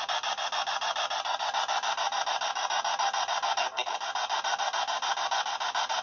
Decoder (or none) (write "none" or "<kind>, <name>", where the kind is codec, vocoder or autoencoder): none